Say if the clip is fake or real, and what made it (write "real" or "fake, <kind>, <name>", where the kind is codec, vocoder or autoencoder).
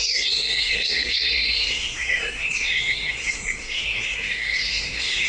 fake, codec, SNAC